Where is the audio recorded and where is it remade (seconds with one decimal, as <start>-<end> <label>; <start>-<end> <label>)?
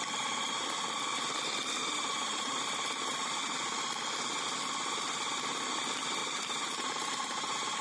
0.0-1.8 recorded; 1.8-2.5 remade; 2.5-6.2 recorded; 6.2-7.8 remade